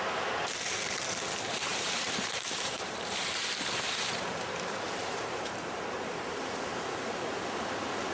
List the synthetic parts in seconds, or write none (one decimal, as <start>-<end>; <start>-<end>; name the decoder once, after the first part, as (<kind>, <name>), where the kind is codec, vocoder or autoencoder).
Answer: 1.7-6.3 (vocoder, BigVGAN v2)